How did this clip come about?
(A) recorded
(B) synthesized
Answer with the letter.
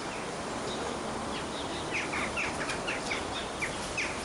B